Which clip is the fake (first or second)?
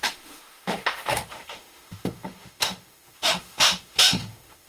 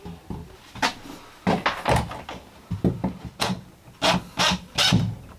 first